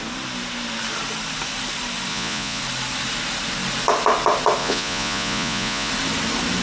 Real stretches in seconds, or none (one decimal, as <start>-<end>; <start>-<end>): 0.0-2.1; 2.6-4.6; 5.9-6.6